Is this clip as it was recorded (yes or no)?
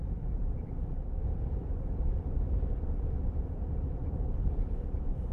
no